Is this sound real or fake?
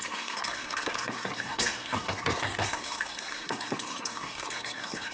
fake